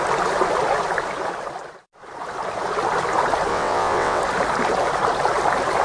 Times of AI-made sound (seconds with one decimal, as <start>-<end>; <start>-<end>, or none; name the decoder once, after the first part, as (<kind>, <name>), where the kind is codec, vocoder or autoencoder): 3.5-4.2 (vocoder, WaveNeXt)